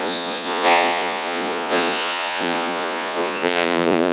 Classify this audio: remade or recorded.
remade